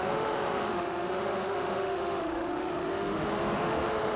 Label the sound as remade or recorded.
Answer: remade